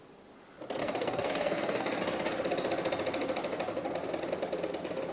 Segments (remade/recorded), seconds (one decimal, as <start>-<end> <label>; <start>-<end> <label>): 0.0-0.8 recorded; 0.8-2.0 remade; 2.0-5.1 recorded